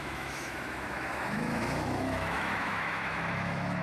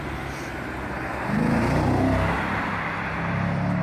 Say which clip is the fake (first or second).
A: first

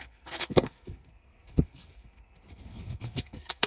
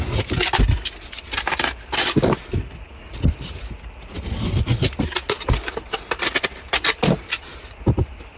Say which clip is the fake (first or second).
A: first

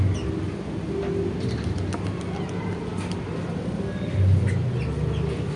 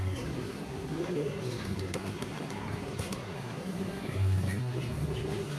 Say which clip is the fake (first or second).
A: second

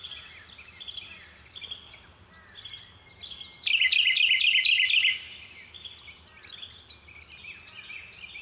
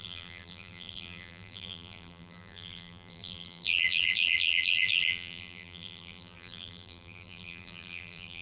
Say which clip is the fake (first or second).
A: second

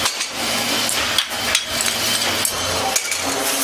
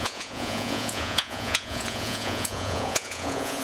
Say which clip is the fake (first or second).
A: second